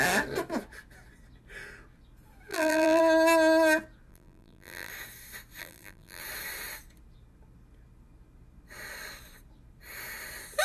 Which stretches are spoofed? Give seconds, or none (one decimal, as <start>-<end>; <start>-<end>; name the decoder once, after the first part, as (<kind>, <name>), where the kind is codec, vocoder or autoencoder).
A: 2.5-3.0 (vocoder, BigVGAN v2); 4.1-4.9; 5.6-6.2